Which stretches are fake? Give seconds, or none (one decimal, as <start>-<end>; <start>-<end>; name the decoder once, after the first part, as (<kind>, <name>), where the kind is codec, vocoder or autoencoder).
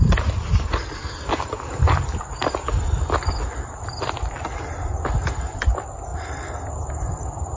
none